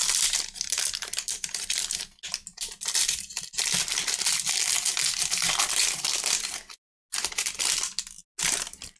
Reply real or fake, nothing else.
real